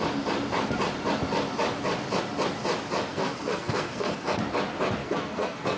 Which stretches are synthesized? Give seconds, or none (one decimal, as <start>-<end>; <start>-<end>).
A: 3.1-4.3; 5.0-5.8